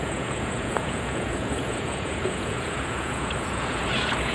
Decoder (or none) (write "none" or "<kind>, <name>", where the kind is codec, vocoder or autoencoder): vocoder, Vocos